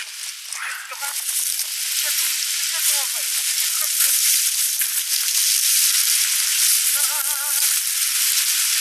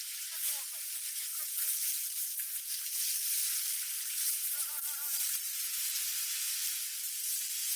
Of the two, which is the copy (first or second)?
second